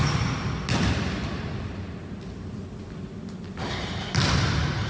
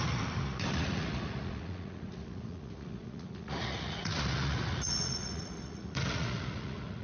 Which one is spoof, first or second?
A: second